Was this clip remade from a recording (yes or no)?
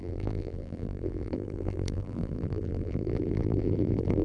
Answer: yes